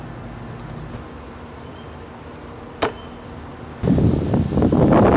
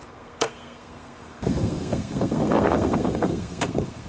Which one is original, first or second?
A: first